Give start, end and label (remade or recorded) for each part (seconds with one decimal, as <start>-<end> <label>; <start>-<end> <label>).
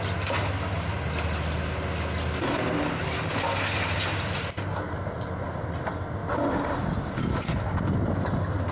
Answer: 0.0-8.7 recorded